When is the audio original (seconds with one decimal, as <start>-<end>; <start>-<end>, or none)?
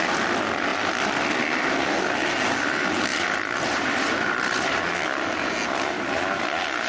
0.0-3.1; 4.8-6.9